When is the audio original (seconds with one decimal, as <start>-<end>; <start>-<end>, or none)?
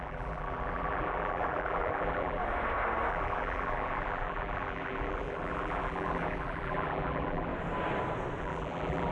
2.4-3.1; 7.5-8.4